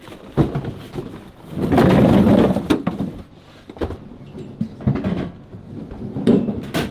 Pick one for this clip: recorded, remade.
recorded